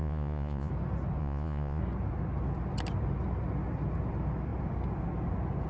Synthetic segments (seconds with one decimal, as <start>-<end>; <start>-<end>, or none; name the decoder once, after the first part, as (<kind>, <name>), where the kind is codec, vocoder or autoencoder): 0.0-0.7 (vocoder, Vocos); 1.2-1.8